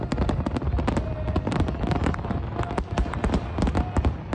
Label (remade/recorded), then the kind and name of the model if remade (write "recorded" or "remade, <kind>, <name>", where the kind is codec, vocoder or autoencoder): recorded